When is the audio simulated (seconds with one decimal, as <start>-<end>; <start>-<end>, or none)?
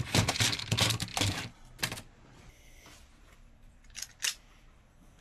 0.0-1.1; 1.8-5.2